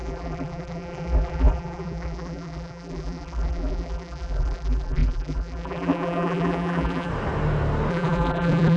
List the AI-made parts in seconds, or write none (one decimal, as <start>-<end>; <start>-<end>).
0.0-7.1; 7.9-8.8